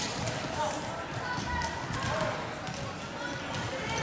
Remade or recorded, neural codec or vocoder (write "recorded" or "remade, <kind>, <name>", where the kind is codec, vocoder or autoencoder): recorded